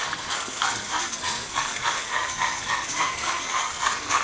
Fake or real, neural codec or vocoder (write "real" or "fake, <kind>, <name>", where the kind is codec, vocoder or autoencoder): fake, codec, SNAC